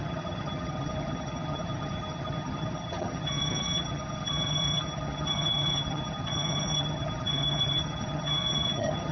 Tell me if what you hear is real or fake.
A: fake